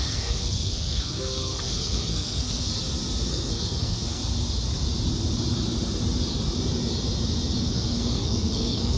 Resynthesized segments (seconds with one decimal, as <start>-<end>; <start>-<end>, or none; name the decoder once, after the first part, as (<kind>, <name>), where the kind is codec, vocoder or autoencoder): 0.0-2.7 (codec, SNAC); 3.3-4.2; 7.6-9.0